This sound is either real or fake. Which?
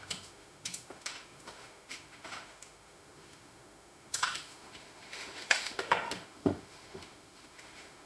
fake